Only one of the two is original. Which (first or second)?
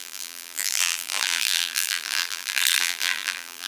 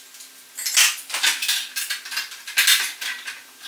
second